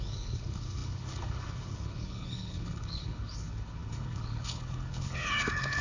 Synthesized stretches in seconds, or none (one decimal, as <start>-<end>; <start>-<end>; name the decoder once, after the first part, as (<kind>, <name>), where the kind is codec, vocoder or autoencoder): 0.0-5.8 (codec, HILCodec)